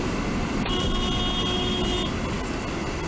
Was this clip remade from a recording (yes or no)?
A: no